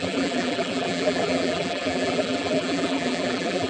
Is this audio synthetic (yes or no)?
yes